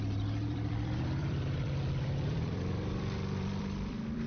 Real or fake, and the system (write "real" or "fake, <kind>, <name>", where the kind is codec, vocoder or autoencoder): fake, vocoder, BigVGAN v2